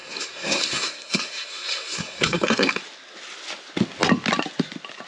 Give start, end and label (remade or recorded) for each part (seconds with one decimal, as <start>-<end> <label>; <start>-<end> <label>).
0.0-2.8 remade; 2.8-5.1 recorded